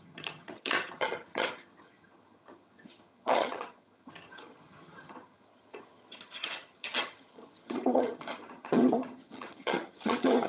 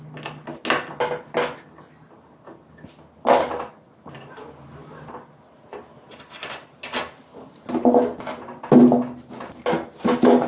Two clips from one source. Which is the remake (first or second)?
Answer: first